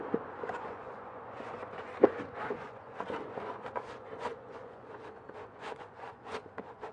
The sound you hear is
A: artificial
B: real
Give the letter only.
A